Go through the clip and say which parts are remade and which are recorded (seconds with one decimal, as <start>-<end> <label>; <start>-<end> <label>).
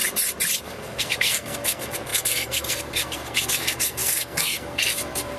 0.0-0.6 recorded; 0.6-5.4 remade